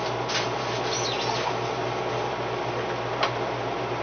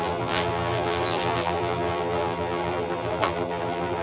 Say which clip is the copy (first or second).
second